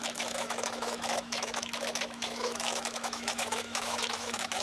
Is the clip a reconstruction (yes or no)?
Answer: yes